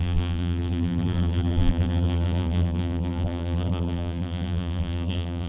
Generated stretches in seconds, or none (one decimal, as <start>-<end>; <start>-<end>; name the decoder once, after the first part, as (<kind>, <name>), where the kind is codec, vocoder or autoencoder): 0.0-5.5 (vocoder, BigVGAN v2)